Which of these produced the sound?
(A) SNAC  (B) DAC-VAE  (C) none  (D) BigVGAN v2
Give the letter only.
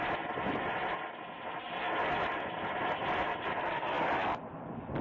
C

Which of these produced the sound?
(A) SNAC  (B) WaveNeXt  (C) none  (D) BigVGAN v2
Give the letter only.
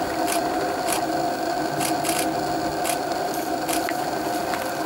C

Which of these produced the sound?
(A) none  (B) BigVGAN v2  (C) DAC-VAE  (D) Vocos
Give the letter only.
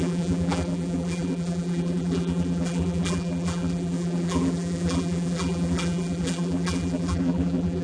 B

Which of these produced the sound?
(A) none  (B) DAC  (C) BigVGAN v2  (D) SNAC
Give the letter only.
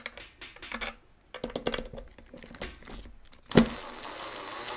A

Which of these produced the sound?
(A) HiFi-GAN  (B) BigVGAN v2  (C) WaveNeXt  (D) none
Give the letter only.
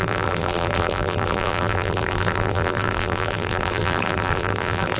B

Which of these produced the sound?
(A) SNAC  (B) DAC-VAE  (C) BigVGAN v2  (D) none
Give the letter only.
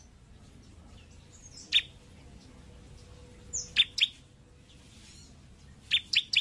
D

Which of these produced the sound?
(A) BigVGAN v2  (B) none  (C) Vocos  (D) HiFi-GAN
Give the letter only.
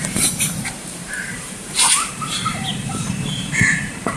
A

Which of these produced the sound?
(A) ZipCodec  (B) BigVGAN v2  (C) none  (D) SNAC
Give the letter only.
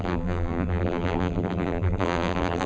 B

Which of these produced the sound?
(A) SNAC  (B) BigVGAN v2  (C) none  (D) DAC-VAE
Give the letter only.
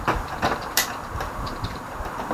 B